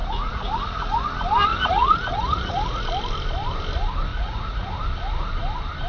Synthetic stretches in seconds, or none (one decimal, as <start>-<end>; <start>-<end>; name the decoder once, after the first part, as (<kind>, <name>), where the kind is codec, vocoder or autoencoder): 0.0-1.1 (vocoder, Vocos); 1.5-2.8; 4.1-4.7